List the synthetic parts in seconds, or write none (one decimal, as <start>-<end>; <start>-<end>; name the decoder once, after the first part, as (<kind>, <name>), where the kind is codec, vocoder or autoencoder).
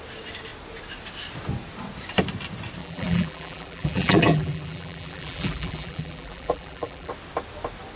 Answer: 2.8-7.1 (vocoder, BigVGAN v2)